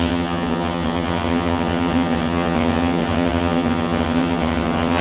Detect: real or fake fake